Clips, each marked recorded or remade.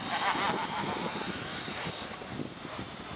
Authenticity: recorded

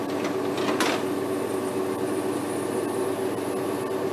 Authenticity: recorded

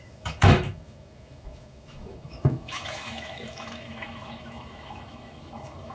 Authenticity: remade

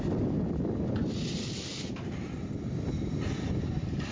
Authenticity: recorded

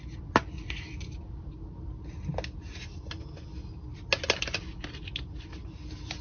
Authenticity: recorded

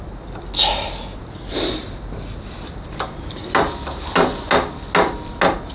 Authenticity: recorded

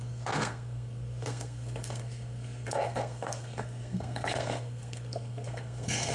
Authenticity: remade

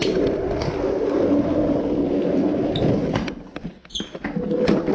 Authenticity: recorded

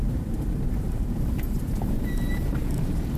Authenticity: remade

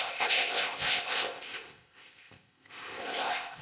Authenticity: remade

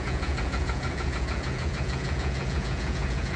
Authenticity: remade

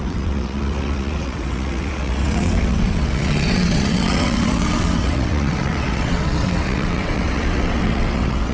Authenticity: remade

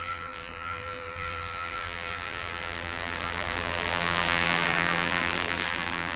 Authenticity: remade